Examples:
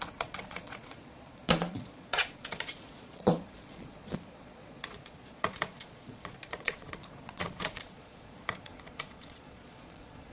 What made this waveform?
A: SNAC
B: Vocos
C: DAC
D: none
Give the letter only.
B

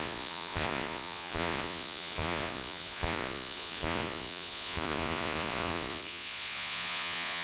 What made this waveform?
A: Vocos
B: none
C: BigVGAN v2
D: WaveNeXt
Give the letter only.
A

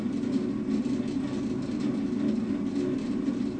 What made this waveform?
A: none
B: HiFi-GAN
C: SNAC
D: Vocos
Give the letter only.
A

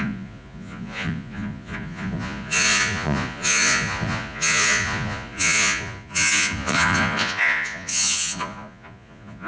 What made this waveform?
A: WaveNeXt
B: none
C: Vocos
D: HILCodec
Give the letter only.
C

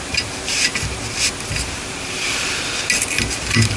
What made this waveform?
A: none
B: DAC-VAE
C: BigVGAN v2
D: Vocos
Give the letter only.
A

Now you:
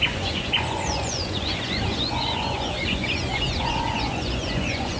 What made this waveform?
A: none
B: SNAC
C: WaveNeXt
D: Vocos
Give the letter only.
D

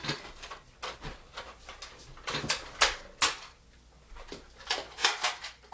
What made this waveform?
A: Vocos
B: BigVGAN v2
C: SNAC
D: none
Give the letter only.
D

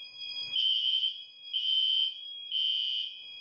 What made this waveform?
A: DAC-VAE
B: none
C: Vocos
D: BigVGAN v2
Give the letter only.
C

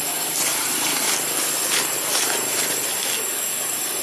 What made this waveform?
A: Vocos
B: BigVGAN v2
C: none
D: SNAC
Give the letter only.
C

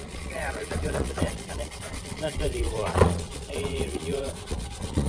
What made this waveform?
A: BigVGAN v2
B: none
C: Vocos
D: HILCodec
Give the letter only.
C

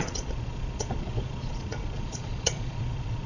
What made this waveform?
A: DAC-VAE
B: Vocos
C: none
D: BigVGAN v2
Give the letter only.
B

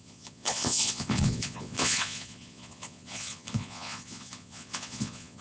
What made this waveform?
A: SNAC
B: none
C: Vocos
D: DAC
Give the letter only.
C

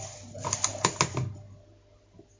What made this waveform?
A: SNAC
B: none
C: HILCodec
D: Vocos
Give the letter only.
B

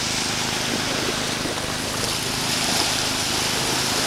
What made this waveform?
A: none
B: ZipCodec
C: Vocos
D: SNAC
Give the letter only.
A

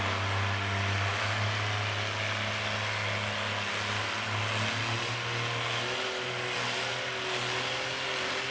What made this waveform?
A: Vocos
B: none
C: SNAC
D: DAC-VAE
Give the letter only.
B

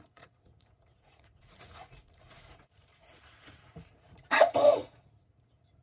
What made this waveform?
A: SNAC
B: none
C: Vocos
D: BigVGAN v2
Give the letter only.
C